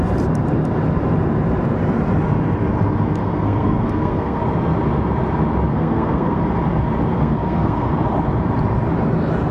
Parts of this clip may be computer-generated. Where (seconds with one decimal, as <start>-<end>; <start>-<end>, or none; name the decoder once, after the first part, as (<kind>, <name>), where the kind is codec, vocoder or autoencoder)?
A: 3.2-4.4 (codec, SNAC); 5.7-6.4; 7.1-7.9